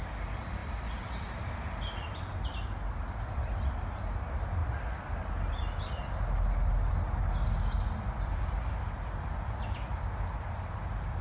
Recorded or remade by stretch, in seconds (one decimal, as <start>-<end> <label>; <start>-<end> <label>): 0.0-0.6 recorded; 0.6-1.6 remade; 1.6-11.2 recorded